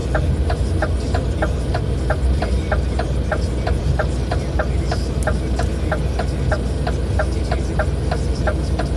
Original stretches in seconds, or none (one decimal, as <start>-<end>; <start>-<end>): 0.0-9.0